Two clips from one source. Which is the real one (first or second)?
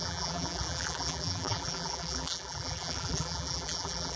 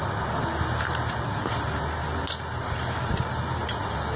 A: second